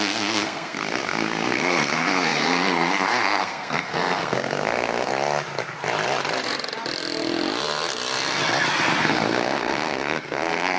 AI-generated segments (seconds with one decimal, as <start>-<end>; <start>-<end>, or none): 0.0-5.1; 9.0-10.8